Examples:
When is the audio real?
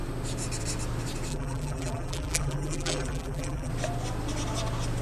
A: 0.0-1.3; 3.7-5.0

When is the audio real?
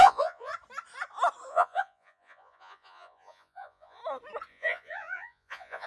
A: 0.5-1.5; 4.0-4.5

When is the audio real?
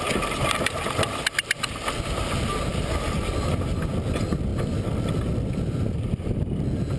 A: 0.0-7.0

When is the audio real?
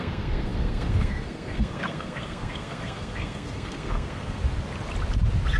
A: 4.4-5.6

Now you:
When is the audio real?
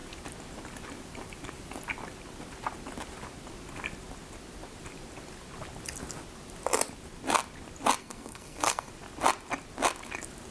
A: 0.0-8.0; 8.9-10.5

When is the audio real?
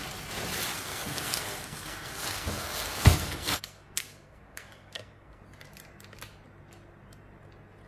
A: 0.0-0.7; 5.4-7.9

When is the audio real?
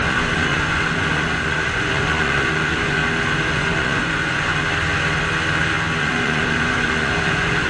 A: 3.0-3.5; 4.5-6.0